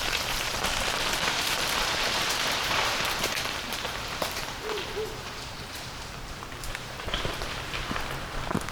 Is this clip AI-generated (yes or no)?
yes